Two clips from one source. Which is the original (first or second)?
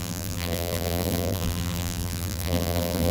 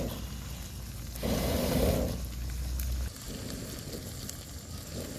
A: second